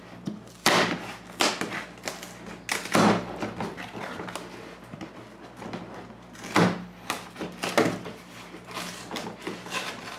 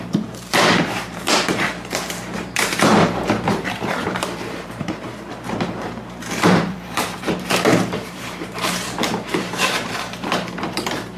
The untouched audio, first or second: first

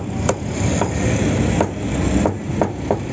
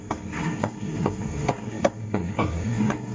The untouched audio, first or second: first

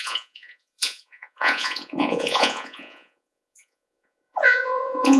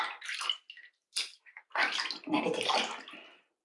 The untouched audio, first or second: second